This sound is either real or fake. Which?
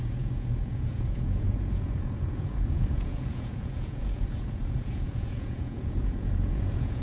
fake